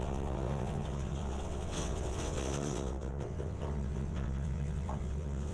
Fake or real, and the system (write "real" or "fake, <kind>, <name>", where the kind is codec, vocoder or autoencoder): fake, vocoder, WaveNeXt